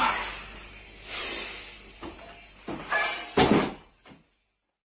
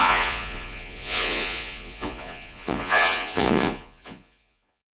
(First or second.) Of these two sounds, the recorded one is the first